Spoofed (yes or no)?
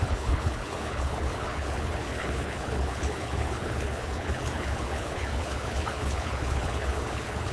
yes